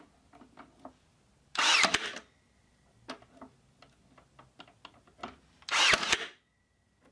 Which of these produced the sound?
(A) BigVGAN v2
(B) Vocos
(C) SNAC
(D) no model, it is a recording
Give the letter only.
D